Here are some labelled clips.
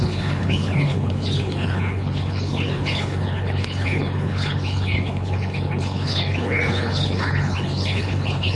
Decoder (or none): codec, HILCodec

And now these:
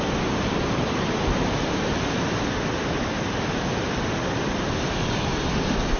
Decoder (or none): none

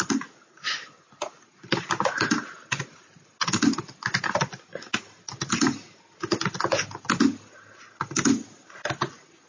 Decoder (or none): none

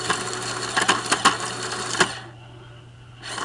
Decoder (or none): none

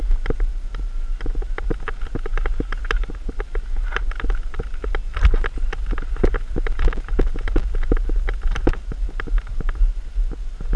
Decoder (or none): none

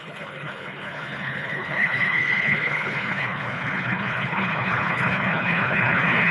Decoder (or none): codec, HILCodec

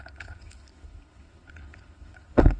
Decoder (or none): codec, HILCodec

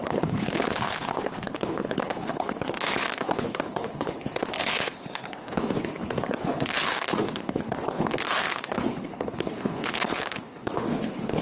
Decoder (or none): codec, HILCodec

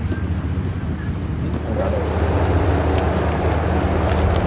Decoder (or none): none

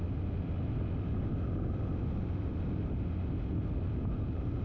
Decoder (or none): none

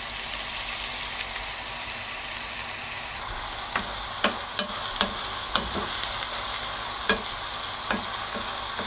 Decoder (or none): none